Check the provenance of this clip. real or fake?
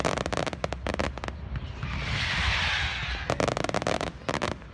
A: real